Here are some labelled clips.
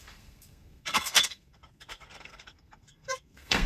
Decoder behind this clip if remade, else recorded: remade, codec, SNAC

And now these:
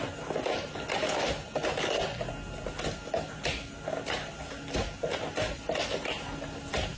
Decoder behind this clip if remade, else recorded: recorded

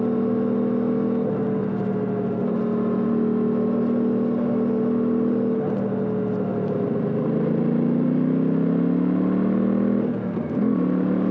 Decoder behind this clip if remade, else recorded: recorded